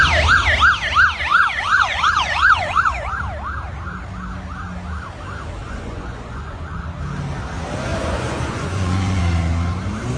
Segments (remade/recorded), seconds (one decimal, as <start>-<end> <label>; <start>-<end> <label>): 0.0-1.3 recorded; 1.3-3.1 remade; 3.1-5.6 recorded; 5.6-6.8 remade; 6.8-7.9 recorded; 7.9-9.2 remade; 9.2-10.2 recorded